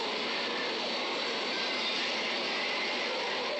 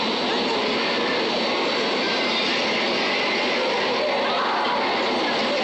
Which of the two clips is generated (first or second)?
first